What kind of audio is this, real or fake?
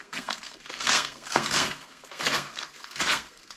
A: fake